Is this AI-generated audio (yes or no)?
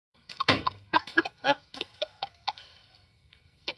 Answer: yes